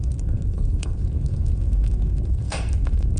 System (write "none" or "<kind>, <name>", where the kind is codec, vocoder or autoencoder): codec, SNAC